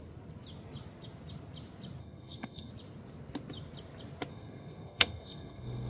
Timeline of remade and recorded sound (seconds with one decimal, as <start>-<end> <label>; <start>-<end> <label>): 0.0-2.0 recorded; 2.0-2.7 remade; 2.7-4.3 recorded; 4.3-5.9 remade